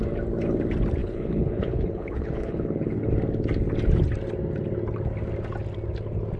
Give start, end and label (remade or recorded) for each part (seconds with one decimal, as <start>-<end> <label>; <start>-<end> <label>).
0.0-1.0 recorded; 1.0-3.1 remade; 3.1-6.4 recorded